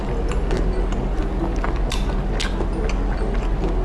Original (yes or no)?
yes